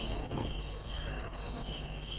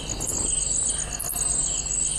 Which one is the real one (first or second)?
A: second